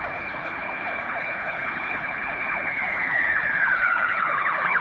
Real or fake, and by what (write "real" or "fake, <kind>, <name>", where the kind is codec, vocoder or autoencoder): fake, codec, HILCodec